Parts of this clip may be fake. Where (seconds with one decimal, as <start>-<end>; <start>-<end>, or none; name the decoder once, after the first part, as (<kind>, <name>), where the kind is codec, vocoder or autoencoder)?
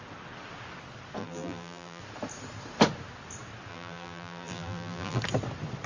1.2-2.0 (vocoder, BigVGAN v2); 3.7-5.2